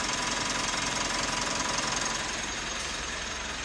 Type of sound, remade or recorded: remade